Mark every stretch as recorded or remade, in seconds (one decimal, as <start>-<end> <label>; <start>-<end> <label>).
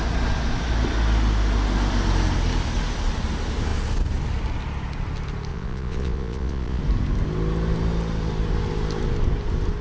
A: 0.0-5.5 recorded; 5.5-6.8 remade; 6.8-9.8 recorded